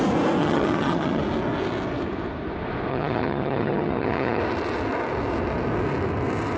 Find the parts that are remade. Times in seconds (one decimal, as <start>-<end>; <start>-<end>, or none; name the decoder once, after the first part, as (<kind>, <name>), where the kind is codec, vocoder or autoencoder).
0.4-1.2 (vocoder, HiFi-GAN); 2.9-4.4